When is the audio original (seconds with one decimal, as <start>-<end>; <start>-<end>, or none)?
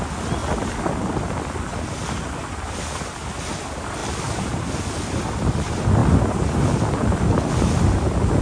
0.0-8.4